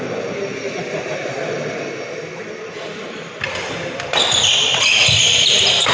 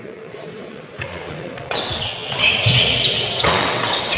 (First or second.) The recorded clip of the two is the first